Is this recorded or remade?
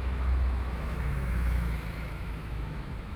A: remade